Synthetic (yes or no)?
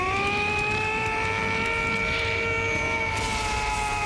no